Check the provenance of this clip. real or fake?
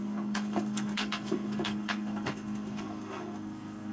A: fake